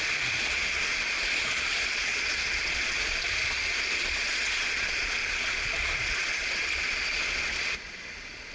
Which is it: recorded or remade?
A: remade